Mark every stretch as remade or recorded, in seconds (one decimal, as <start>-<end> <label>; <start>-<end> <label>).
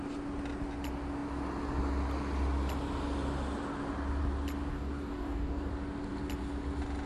0.0-4.7 recorded; 4.7-5.7 remade; 5.7-7.1 recorded